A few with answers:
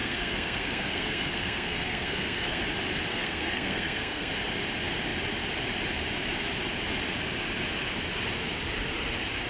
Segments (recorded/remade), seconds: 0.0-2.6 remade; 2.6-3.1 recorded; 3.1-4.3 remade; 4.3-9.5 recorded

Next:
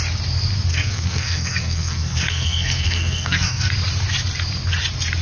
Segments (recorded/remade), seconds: 0.0-0.7 recorded; 0.7-3.7 remade; 3.7-5.2 recorded

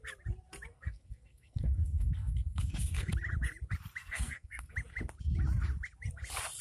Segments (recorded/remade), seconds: 0.0-0.7 recorded; 0.7-3.1 remade; 3.1-4.0 recorded; 4.0-4.7 remade; 4.7-6.6 recorded

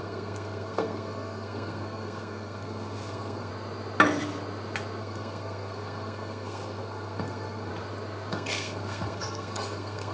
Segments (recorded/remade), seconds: 0.0-3.5 remade; 3.5-5.0 recorded; 5.0-7.7 remade; 7.7-8.3 recorded; 8.3-10.1 remade

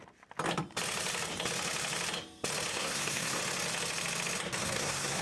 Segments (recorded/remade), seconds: 0.0-2.7 recorded; 2.7-3.4 remade; 3.4-4.6 recorded; 4.6-5.2 remade

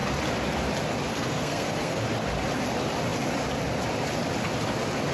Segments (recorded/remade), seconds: 0.0-1.1 recorded; 1.1-2.0 remade; 2.0-5.1 recorded

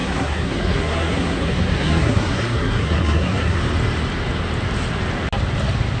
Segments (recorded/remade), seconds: 0.0-3.6 remade; 3.6-6.0 recorded